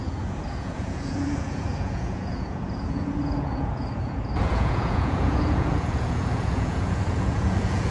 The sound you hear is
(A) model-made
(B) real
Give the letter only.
A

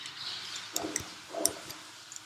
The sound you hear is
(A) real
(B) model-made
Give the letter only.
A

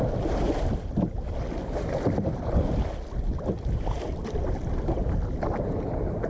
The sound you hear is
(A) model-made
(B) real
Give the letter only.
B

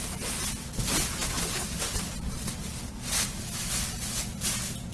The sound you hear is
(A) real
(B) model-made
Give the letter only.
A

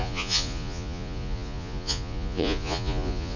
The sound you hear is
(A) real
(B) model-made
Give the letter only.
B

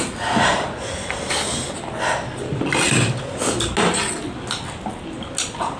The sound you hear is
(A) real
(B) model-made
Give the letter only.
A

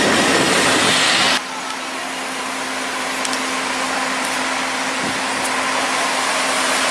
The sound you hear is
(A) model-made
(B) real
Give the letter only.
B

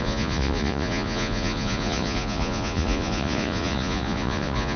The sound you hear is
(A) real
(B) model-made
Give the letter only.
B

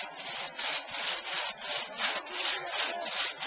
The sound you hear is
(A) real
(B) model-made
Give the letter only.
A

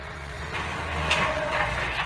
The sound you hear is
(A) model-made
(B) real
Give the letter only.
A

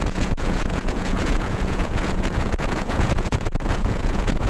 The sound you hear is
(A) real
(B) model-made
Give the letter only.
B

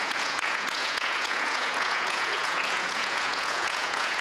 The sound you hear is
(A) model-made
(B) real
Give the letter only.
A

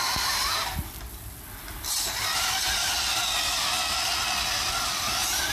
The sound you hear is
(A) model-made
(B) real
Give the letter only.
B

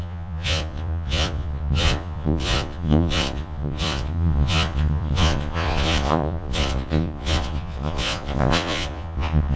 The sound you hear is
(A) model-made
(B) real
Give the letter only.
A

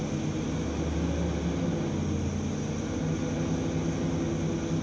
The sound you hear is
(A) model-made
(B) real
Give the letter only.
B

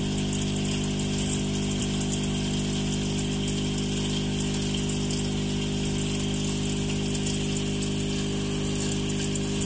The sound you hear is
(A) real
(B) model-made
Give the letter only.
A